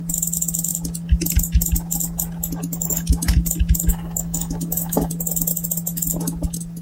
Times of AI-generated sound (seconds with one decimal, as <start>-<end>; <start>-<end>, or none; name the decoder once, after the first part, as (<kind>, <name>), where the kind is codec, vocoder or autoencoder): 3.9-5.1 (codec, DAC)